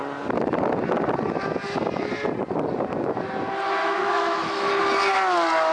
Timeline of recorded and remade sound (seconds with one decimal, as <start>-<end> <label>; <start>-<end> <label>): 0.0-3.8 recorded; 3.8-4.7 remade; 4.7-5.7 recorded